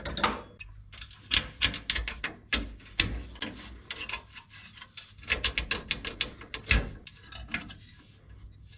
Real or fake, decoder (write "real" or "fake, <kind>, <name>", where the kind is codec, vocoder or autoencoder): real